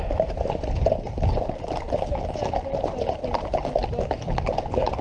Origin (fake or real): real